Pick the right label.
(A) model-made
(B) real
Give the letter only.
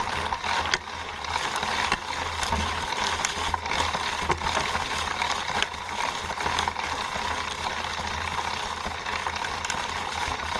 B